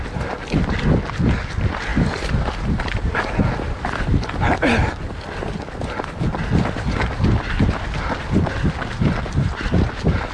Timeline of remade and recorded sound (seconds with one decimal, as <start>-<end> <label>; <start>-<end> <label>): 0.0-10.3 recorded